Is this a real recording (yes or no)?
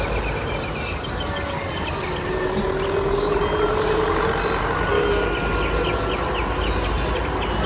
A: yes